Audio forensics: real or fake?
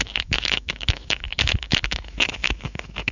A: fake